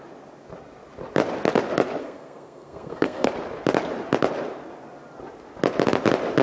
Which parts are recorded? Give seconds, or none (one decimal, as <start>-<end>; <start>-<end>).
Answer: 0.0-2.0; 3.3-6.4